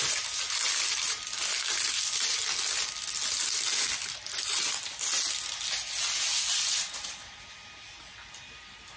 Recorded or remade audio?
recorded